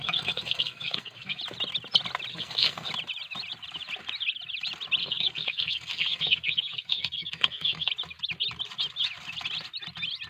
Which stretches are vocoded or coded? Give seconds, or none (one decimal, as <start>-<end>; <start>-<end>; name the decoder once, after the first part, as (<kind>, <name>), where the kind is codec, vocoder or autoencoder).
0.0-1.4 (codec, SNAC); 2.3-2.9; 5.0-7.9